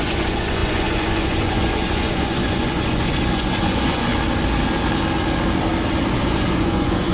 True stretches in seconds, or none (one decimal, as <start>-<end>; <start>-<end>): 4.1-6.2